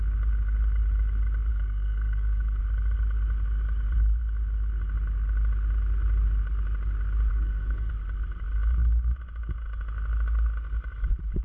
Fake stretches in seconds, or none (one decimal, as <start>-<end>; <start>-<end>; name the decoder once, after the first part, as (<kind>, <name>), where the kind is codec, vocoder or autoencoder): 1.5-2.6 (codec, SNAC); 7.3-7.9